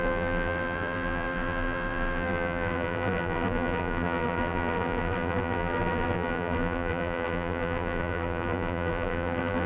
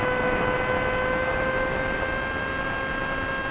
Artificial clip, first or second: first